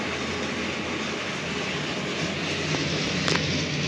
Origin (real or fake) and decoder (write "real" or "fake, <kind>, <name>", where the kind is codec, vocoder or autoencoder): real